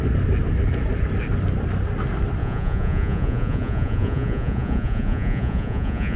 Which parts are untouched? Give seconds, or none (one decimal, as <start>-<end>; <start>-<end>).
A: 0.0-2.4